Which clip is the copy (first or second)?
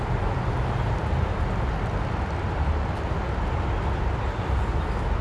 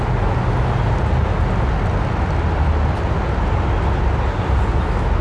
first